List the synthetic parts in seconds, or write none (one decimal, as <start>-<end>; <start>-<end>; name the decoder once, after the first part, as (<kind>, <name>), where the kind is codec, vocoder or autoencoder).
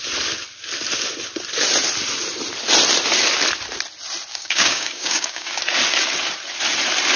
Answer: 4.3-5.6 (codec, DAC)